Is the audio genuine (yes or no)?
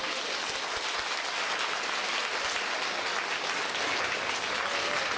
yes